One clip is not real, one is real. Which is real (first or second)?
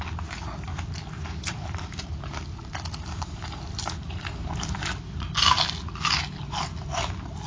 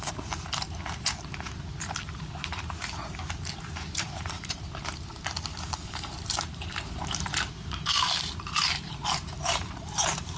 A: first